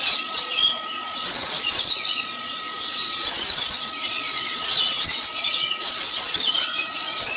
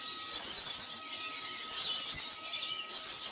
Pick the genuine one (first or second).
second